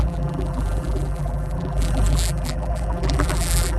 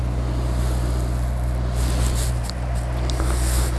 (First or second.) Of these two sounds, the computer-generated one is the first